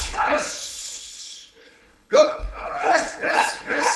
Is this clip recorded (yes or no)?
no